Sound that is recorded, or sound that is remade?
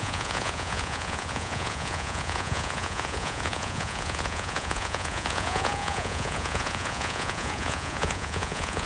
remade